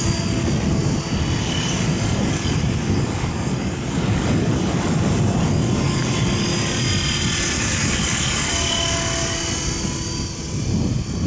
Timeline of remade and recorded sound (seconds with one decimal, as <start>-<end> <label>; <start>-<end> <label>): 0.0-1.4 recorded; 1.4-6.5 remade; 6.5-7.6 recorded; 7.6-8.5 remade; 8.5-11.3 recorded